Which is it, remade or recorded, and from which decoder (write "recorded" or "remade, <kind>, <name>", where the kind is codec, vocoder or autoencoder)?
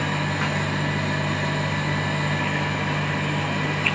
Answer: recorded